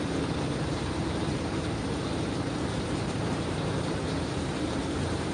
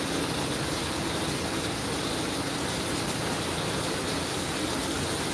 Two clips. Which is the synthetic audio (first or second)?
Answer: first